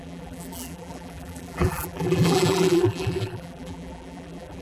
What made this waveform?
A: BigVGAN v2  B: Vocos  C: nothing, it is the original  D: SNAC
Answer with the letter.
A